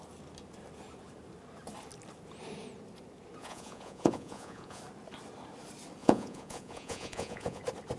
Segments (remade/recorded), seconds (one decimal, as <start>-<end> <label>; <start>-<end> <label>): 0.0-3.4 recorded; 3.4-4.8 remade; 4.8-6.0 recorded; 6.0-7.6 remade; 7.6-8.0 recorded